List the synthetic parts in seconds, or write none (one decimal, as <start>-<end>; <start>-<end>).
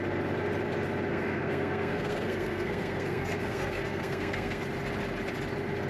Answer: 1.1-4.6